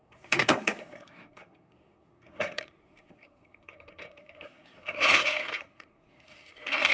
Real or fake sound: fake